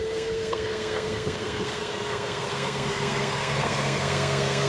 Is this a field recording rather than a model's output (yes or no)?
no